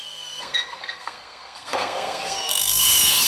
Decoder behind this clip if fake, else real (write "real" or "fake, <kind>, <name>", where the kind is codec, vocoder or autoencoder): fake, codec, SNAC